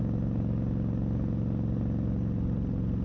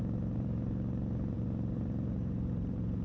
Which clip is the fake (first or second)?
second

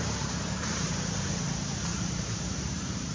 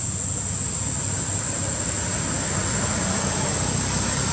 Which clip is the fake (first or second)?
first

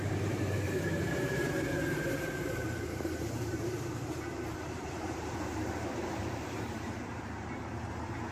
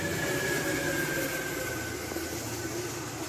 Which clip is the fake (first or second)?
first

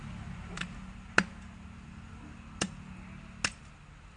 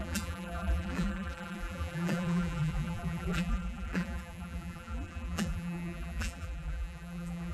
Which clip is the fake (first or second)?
second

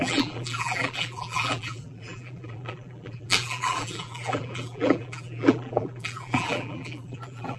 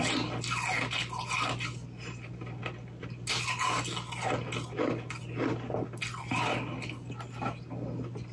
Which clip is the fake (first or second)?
first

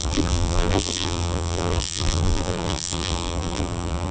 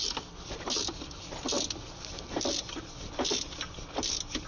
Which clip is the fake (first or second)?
first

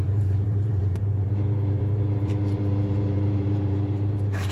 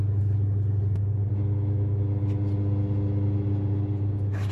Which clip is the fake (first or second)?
first